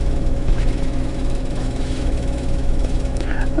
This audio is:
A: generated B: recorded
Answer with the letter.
A